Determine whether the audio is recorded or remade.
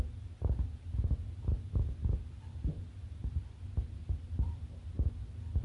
recorded